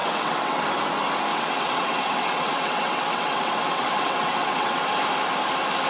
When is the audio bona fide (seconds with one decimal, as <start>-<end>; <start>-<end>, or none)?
0.6-1.3; 4.8-5.9